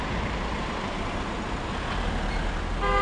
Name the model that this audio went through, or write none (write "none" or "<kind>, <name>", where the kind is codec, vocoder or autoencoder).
none